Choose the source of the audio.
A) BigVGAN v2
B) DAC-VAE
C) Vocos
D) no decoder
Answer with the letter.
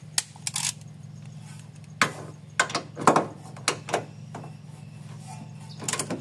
D